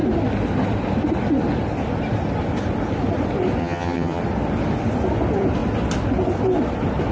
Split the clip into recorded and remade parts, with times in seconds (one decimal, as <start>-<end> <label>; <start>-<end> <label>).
0.0-3.6 recorded; 3.6-4.2 remade; 4.2-7.1 recorded